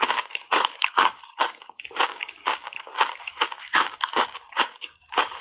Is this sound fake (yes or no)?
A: yes